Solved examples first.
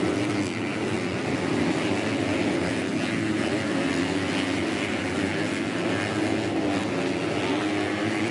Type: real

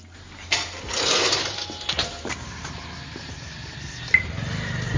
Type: real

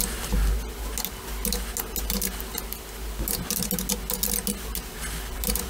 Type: real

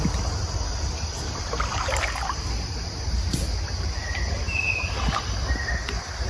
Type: real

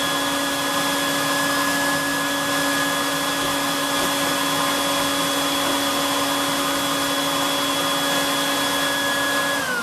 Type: real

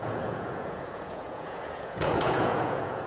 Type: fake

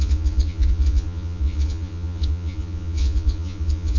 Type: fake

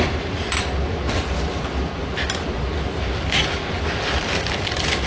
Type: real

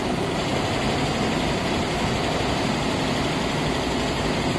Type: real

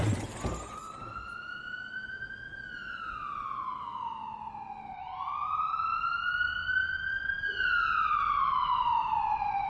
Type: real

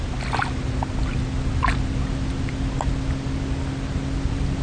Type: real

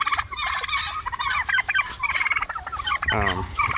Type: real